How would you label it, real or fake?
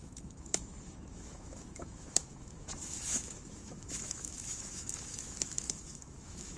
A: fake